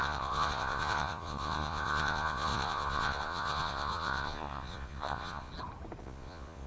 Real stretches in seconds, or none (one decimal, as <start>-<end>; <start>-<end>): 5.5-6.0

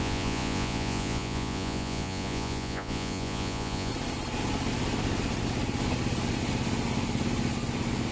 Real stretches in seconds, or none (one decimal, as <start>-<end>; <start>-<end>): 3.9-8.1

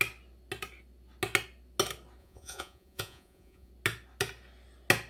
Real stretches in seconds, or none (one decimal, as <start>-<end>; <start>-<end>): 0.0-2.2; 3.7-5.1